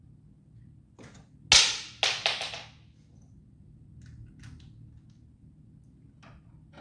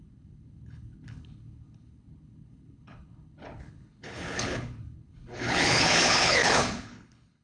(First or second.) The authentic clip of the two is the first